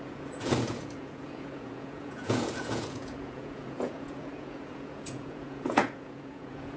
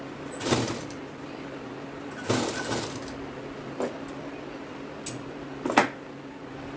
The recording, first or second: second